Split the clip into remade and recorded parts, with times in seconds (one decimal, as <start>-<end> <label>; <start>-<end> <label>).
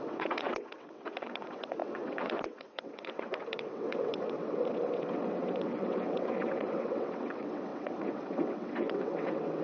0.0-9.6 remade